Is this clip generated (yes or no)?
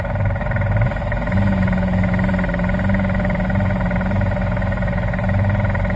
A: no